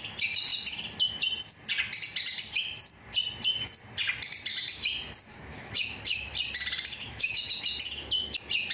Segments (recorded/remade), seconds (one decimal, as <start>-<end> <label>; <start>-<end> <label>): 0.0-5.3 recorded; 5.3-6.3 remade; 6.3-7.0 recorded; 7.0-7.5 remade; 7.5-8.7 recorded